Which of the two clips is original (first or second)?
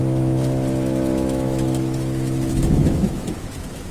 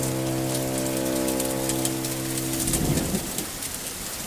second